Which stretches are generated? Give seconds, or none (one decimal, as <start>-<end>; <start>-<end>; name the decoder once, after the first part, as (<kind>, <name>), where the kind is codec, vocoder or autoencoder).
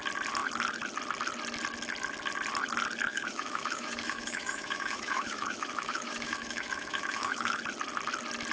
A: 3.1-7.6 (autoencoder, DAC-VAE)